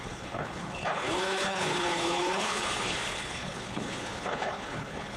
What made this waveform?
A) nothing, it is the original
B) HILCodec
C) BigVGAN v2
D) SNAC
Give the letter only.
B